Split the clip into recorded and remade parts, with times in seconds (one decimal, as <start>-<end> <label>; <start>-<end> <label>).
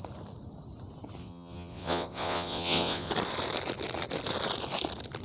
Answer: 0.0-1.2 recorded; 1.2-3.1 remade; 3.1-5.2 recorded